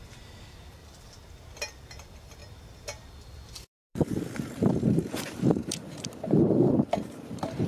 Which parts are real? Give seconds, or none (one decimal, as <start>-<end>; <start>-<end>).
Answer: 0.8-1.9; 2.4-3.6